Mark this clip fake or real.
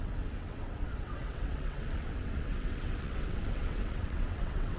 fake